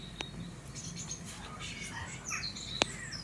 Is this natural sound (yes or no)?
yes